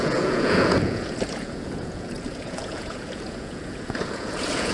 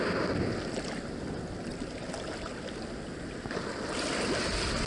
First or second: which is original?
second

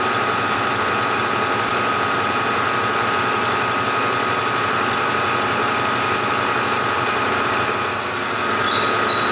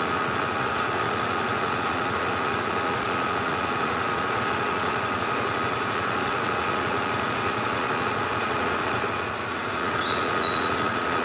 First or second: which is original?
first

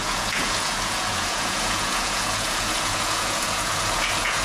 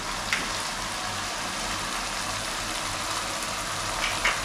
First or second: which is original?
second